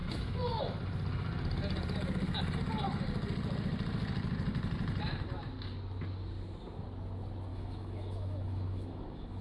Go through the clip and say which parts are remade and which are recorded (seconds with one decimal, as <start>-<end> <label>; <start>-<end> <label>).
0.0-0.6 remade; 0.6-7.5 recorded; 7.5-9.4 remade